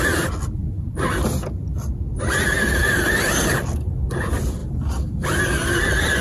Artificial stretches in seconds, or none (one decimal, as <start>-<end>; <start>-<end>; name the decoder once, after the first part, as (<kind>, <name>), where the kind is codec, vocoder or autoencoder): 2.8-3.4 (vocoder, BigVGAN v2)